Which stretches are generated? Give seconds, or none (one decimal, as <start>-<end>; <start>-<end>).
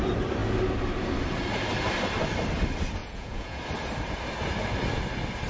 3.0-3.6